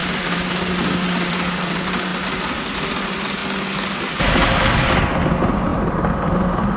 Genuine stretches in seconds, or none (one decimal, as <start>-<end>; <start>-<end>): 2.1-2.9; 3.4-5.2